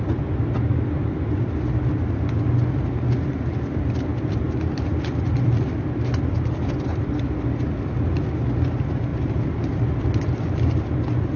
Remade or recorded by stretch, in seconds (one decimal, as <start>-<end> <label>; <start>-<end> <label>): 0.0-4.1 recorded; 4.1-7.2 remade; 7.2-9.1 recorded; 9.1-10.9 remade; 10.9-11.4 recorded

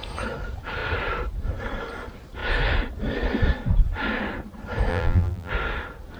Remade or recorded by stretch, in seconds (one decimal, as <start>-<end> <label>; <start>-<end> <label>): 0.0-4.9 recorded; 4.9-5.5 remade; 5.5-6.2 recorded

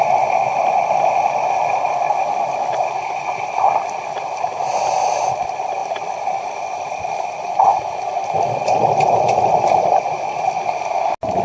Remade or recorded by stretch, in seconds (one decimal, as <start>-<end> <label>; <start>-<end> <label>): 0.0-5.8 recorded; 5.8-7.9 remade; 7.9-11.4 recorded

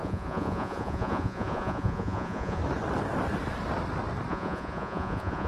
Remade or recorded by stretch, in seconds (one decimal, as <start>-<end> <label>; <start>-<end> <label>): 0.0-2.6 remade; 2.6-4.3 recorded; 4.3-5.5 remade